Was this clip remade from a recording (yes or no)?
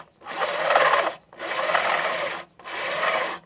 no